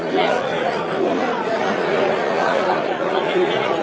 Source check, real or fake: fake